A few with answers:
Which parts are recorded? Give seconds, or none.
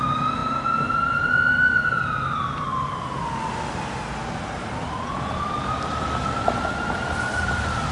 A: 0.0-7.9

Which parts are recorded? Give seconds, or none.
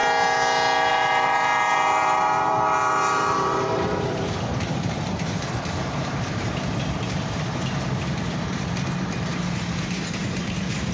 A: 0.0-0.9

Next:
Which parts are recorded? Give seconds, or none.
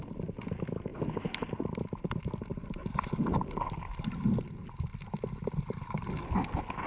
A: 0.0-6.9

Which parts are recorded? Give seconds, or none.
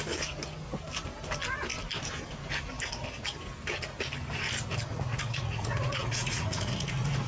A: 0.0-4.9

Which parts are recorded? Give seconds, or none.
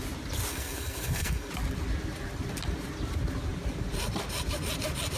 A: 0.0-0.5; 1.5-5.2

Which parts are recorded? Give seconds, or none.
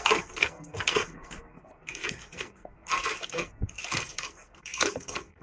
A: none